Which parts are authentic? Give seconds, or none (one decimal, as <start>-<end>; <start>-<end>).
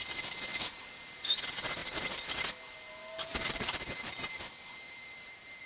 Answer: 0.0-0.5; 1.3-1.8; 2.5-3.3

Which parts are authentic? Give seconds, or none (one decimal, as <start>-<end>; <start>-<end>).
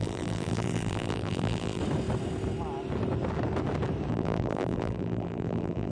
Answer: 1.8-4.1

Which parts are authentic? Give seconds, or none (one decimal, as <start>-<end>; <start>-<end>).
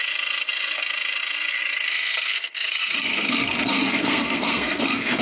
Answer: 0.0-1.9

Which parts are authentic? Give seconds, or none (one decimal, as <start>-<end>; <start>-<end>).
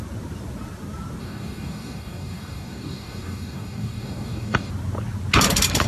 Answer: 0.0-1.2; 4.7-5.9